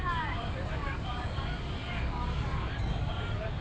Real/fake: fake